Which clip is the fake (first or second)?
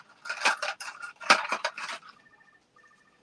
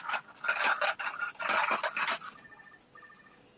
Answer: first